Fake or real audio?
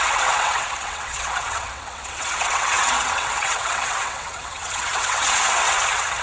fake